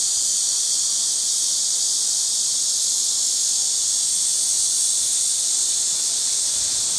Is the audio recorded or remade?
recorded